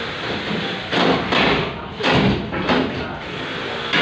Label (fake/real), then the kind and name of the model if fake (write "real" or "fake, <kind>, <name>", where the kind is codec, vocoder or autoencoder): real